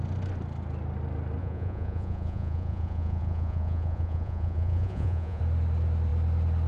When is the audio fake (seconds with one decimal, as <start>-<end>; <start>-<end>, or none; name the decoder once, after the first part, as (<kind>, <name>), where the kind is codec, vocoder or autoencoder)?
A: 1.4-5.4 (vocoder, Vocos)